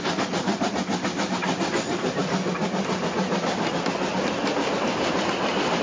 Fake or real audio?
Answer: real